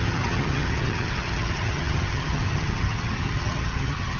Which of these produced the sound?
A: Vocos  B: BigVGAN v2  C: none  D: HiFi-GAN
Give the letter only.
D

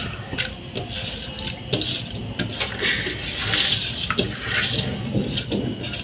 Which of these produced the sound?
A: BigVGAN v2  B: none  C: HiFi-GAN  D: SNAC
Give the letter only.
B